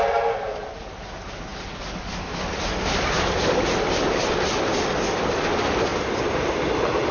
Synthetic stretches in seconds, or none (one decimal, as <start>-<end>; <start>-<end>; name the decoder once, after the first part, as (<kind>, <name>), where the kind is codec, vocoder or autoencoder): none

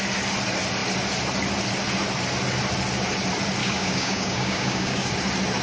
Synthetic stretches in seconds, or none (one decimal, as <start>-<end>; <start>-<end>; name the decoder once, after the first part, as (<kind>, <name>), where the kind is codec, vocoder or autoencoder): 3.6-5.1 (codec, DAC)

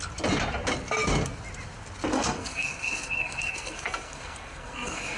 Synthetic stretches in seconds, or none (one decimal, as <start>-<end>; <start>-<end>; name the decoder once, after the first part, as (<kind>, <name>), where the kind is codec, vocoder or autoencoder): 2.1-5.2 (codec, SNAC)

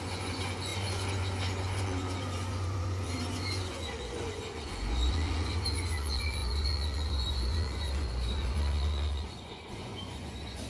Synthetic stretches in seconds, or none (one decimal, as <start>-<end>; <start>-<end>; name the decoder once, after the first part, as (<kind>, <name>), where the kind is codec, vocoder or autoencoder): 0.0-10.7 (vocoder, Vocos)